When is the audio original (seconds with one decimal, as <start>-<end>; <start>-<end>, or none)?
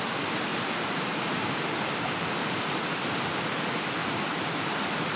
0.0-0.5; 2.9-4.0; 4.8-5.2